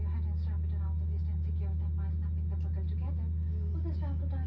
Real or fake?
real